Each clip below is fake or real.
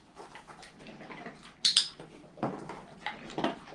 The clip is real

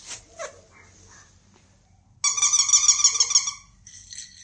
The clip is real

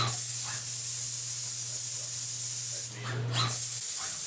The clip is real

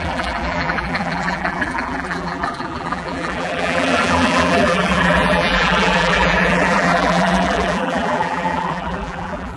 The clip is fake